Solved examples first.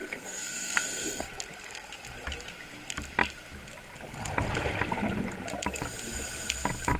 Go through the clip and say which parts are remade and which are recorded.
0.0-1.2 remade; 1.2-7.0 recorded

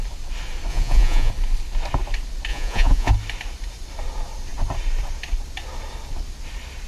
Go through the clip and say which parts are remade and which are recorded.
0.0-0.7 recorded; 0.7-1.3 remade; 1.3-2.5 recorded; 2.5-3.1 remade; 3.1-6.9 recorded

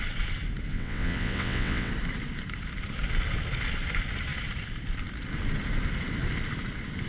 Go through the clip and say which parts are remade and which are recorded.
0.0-0.7 recorded; 0.7-1.9 remade; 1.9-7.1 recorded

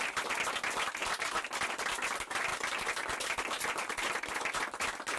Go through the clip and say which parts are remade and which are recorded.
0.0-5.2 recorded

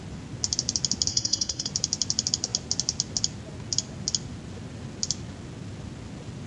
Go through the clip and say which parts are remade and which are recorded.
0.0-1.1 recorded; 1.1-1.7 remade; 1.7-6.5 recorded

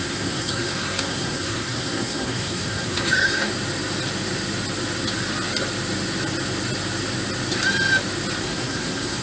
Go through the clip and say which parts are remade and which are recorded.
0.0-3.5 remade; 3.5-8.4 recorded; 8.4-9.2 remade

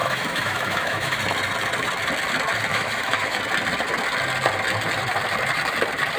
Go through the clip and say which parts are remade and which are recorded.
0.0-1.2 remade; 1.2-2.7 recorded; 2.7-3.4 remade; 3.4-6.2 recorded